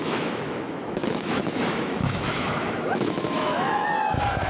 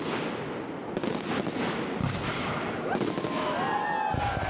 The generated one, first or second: first